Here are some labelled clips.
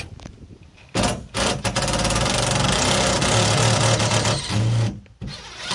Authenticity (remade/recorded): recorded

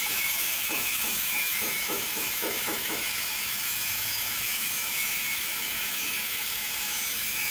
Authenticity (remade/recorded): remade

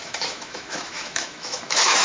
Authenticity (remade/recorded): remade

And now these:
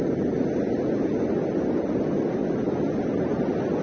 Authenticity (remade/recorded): recorded